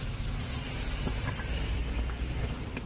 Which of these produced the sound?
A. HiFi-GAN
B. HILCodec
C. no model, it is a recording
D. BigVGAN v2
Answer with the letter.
C